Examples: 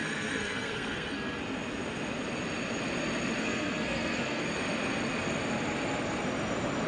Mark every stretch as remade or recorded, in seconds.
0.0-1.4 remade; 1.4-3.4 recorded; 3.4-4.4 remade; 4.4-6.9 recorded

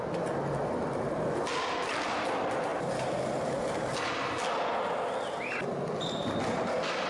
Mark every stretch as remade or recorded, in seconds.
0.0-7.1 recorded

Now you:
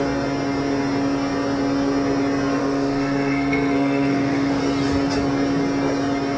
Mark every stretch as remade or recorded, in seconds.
0.0-2.6 recorded; 2.6-4.6 remade; 4.6-6.4 recorded

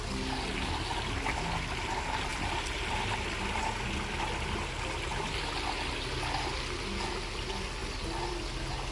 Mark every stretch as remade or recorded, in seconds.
0.0-8.9 recorded

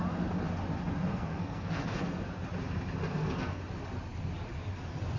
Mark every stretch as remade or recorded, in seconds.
0.0-1.1 recorded; 1.1-2.3 remade; 2.3-3.1 recorded; 3.1-3.6 remade; 3.6-5.2 recorded